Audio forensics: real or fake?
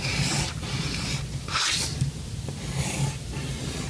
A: real